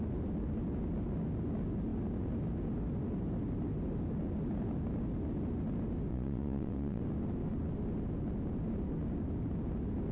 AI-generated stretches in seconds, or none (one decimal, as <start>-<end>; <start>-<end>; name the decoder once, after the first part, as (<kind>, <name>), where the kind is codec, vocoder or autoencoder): 6.1-7.0 (vocoder, Vocos)